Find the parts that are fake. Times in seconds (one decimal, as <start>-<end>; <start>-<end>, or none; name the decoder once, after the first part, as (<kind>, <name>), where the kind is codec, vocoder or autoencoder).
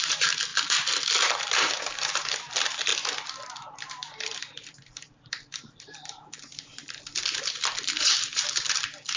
0.0-0.5 (vocoder, BigVGAN v2); 1.3-2.9; 3.7-6.7; 7.9-9.2